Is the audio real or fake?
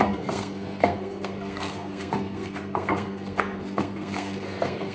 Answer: fake